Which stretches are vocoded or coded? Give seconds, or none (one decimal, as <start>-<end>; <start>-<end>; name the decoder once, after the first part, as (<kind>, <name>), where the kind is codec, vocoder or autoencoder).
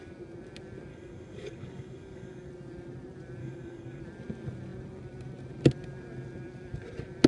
0.9-2.5 (codec, DAC); 3.4-4.0